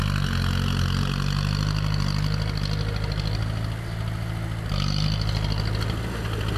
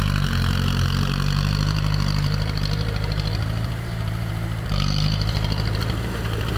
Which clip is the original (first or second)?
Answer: first